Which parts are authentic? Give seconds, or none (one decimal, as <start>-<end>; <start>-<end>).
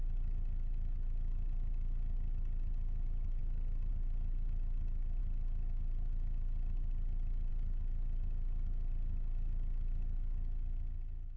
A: 0.0-11.4